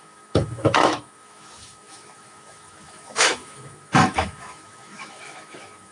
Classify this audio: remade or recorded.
remade